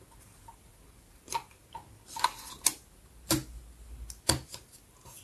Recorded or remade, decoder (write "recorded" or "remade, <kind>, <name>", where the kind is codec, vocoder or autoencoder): recorded